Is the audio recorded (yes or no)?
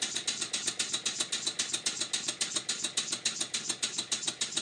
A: yes